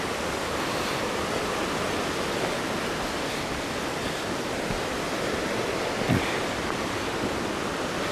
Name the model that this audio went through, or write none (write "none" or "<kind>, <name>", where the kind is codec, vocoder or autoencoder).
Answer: none